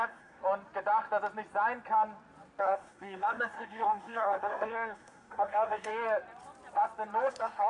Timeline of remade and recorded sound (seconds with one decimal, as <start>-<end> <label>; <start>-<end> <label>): 0.0-0.4 remade; 0.4-2.6 recorded; 2.6-5.9 remade; 5.9-7.3 recorded; 7.3-7.7 remade